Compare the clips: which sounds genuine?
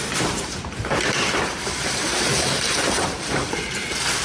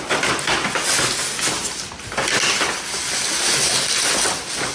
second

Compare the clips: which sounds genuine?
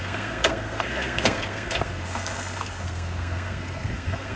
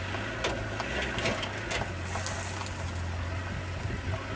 second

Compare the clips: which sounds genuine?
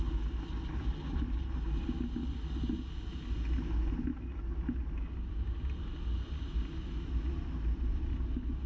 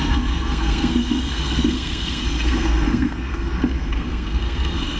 first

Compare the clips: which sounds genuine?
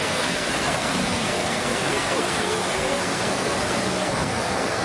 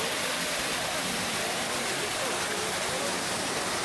second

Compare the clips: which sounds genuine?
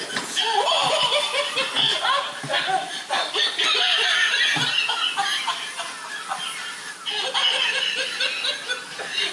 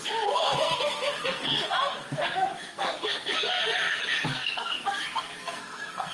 first